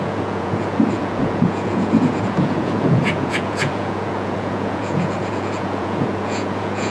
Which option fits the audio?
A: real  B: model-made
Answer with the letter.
B